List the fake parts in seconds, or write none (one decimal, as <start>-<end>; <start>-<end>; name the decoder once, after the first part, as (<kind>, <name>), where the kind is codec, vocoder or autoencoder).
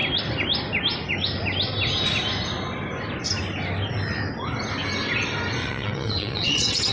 5.6-6.9 (vocoder, WaveNeXt)